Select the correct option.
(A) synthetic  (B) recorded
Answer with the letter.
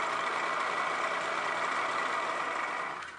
B